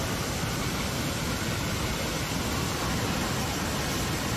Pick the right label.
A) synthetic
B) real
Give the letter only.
B